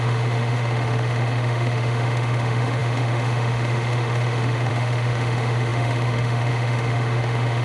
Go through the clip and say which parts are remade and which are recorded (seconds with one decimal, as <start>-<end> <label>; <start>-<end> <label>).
0.0-7.6 remade